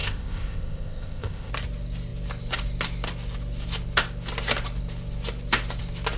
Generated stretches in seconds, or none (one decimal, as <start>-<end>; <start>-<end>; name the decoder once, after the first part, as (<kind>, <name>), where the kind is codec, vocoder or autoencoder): 0.0-1.5 (codec, ZipCodec)